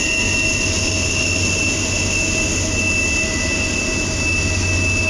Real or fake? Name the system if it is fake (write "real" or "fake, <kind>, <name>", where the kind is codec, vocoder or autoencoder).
real